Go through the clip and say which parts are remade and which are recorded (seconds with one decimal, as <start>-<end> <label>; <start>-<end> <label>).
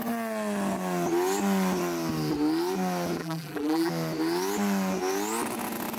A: 0.0-3.2 recorded; 3.2-3.9 remade; 3.9-6.0 recorded